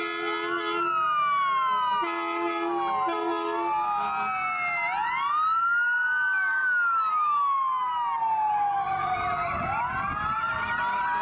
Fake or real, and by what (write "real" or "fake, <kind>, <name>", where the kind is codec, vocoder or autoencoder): real